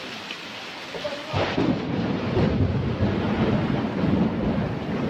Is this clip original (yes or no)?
no